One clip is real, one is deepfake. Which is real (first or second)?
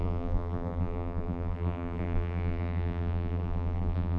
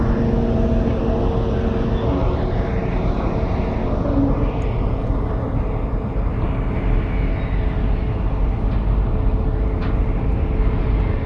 second